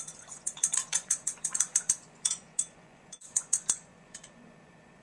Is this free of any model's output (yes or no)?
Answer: no